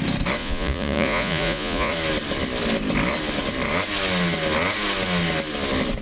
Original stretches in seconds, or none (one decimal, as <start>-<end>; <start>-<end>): 0.0-0.4; 1.9-6.0